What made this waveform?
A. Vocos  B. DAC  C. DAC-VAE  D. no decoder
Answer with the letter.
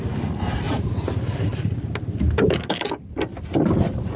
D